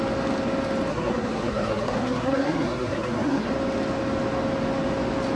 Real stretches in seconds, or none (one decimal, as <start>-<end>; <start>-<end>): 0.0-0.9; 3.5-5.4